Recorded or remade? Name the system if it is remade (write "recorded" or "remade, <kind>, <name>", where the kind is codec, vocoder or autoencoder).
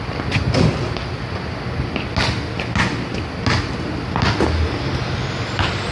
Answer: recorded